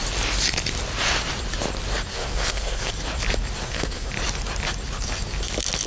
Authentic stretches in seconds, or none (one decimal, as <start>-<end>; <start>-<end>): 0.0-2.1; 2.9-3.6; 4.1-5.9